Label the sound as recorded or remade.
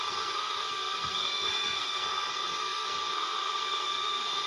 remade